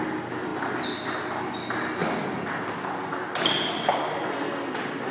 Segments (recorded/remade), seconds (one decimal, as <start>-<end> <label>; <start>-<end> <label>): 0.0-5.1 recorded